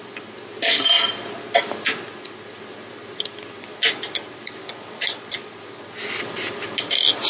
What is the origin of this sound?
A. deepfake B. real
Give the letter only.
B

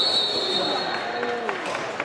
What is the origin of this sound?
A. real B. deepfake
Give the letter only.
A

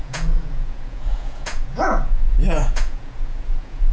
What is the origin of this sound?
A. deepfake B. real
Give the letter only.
A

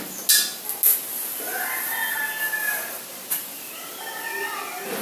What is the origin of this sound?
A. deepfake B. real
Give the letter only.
B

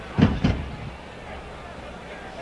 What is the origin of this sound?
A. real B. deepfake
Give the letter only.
A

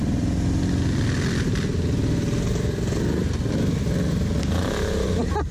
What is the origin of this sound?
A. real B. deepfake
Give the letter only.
A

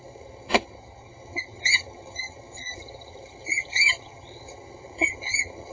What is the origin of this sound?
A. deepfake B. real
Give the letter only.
A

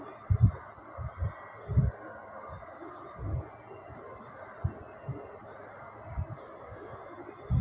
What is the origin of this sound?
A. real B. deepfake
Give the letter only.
A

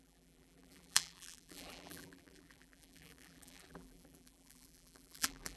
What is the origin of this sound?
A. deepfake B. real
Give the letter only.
A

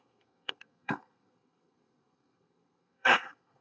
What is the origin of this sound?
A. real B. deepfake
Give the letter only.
B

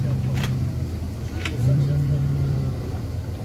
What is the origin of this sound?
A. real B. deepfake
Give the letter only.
B